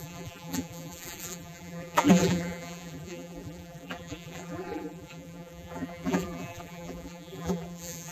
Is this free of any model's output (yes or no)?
no